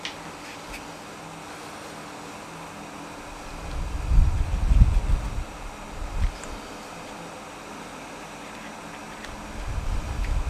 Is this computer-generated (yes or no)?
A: no